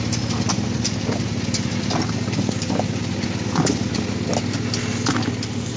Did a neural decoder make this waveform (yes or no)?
no